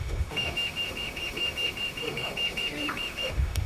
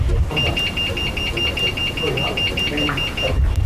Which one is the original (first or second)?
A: second